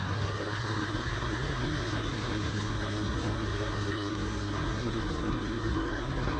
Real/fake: fake